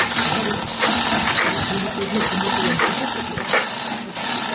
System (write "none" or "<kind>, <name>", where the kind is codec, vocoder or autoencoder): none